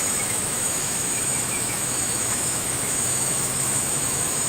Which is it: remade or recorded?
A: remade